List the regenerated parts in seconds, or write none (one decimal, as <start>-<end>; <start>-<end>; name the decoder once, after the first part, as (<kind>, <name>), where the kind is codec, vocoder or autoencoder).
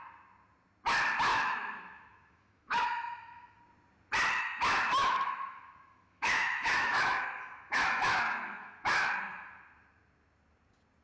1.3-3.6 (autoencoder, DAC-VAE); 5.0-9.1